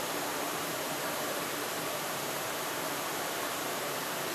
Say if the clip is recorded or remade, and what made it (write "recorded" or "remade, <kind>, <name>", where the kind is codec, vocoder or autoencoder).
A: remade, vocoder, BigVGAN v2